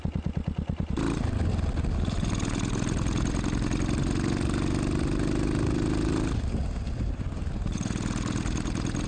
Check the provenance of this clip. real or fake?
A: real